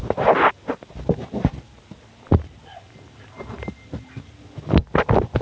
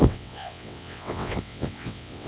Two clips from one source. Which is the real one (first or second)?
first